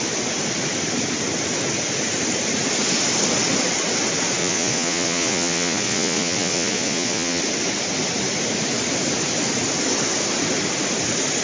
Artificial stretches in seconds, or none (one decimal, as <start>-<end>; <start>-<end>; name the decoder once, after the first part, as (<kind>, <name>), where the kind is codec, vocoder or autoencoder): 4.4-7.4 (vocoder, Vocos)